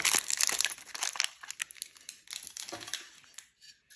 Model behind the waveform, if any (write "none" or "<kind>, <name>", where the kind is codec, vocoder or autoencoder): none